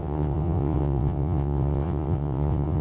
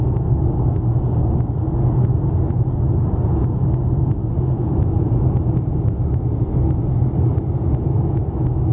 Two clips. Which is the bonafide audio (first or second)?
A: second